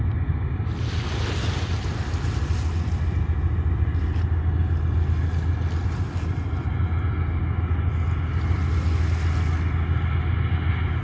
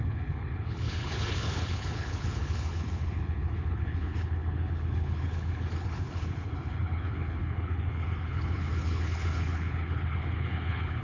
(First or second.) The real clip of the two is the first